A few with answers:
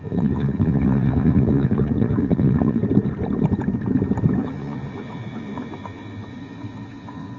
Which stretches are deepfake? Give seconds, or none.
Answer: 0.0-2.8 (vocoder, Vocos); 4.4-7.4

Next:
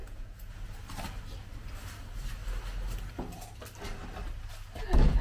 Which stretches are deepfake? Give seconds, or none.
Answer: 0.0-0.5 (vocoder, Vocos)

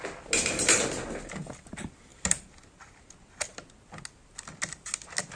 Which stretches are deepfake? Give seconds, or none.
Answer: none

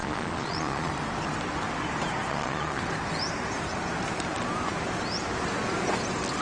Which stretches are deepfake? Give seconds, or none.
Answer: 0.0-0.9 (vocoder, Vocos); 2.3-2.8

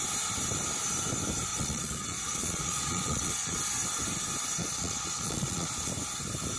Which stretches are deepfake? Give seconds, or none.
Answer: 1.5-3.6 (vocoder, Vocos); 4.6-5.9